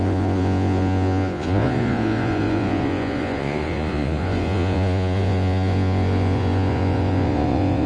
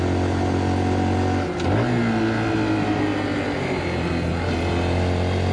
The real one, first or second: second